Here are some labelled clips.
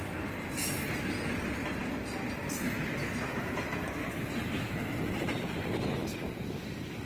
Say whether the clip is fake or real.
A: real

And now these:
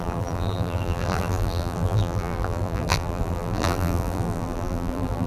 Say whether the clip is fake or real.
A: fake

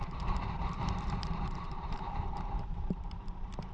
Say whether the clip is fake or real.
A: fake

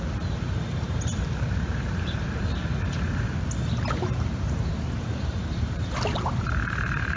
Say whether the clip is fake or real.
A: fake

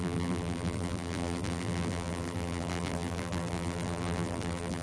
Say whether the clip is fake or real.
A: fake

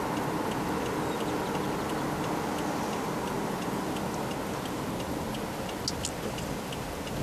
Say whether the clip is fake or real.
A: real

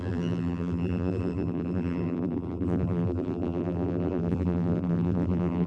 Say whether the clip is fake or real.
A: fake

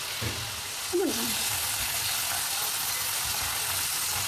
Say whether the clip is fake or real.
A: real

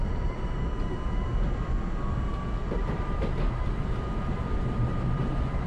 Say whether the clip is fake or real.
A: real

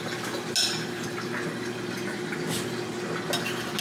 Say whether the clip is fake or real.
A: real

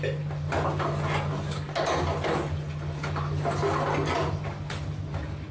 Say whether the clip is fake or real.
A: real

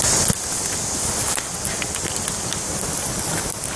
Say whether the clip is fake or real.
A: real